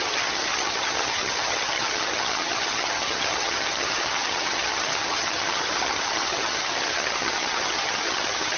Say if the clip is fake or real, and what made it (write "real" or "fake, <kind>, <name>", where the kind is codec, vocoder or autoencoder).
fake, vocoder, HiFi-GAN